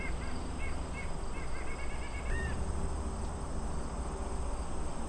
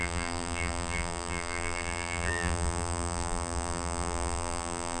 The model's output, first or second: second